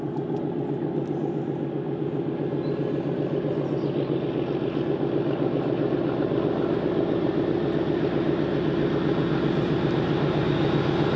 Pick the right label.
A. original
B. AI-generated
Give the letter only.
A